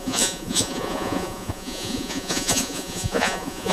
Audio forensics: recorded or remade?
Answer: remade